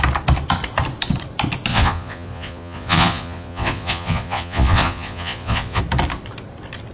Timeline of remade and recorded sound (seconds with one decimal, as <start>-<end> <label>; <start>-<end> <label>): 0.0-1.7 recorded; 1.7-5.8 remade; 5.8-6.9 recorded